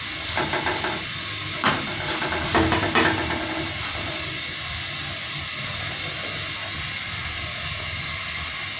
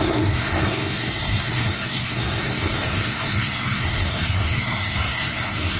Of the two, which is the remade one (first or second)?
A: second